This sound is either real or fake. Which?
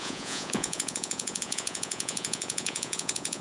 fake